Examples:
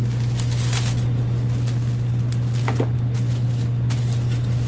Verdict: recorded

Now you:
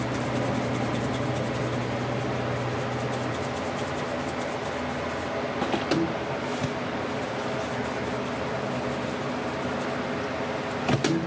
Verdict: recorded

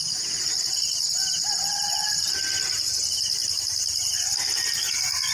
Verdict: recorded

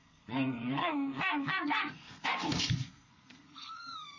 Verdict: remade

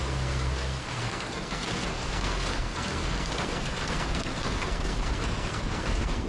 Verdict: remade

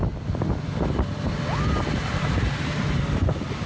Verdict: recorded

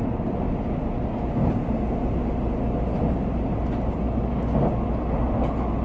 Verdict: recorded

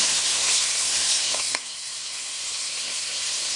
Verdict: remade